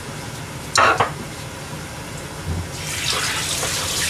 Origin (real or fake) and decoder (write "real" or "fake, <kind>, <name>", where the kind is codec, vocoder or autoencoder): real